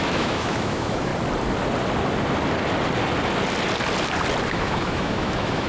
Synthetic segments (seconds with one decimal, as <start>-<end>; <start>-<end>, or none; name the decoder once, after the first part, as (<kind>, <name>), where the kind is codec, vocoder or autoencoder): 0.0-1.1 (autoencoder, DAC-VAE); 4.5-5.7